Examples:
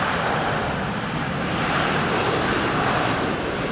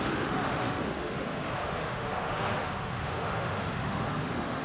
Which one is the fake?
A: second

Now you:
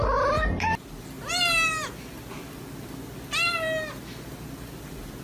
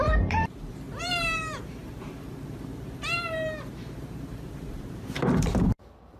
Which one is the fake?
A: second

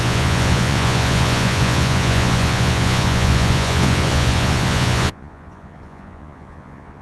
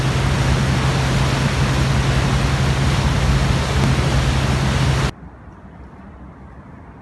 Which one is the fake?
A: first